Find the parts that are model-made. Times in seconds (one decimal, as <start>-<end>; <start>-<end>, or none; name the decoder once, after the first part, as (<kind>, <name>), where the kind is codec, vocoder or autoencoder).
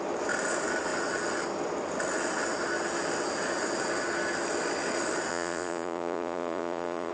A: 5.3-7.1 (vocoder, Vocos)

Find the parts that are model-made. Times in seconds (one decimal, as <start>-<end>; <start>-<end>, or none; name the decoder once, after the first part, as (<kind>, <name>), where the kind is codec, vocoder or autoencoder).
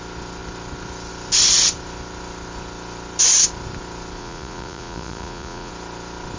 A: 4.2-5.7 (vocoder, Vocos)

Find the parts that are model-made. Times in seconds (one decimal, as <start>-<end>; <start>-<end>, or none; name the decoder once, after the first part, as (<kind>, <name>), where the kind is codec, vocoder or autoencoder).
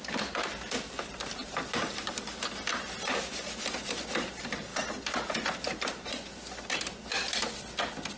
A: none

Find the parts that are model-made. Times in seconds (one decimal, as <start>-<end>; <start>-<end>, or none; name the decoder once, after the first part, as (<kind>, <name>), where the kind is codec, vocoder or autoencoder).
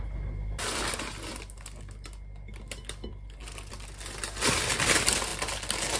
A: none